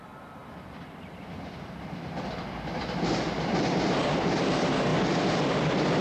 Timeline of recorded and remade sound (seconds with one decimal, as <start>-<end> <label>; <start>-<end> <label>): 0.0-6.0 recorded